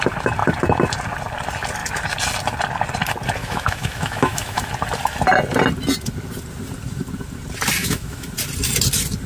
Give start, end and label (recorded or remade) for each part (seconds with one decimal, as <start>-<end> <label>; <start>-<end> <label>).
0.0-3.4 recorded; 3.4-4.7 remade; 4.7-7.8 recorded; 7.8-8.3 remade; 8.3-9.3 recorded